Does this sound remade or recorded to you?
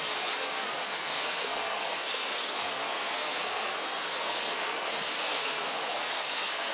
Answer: remade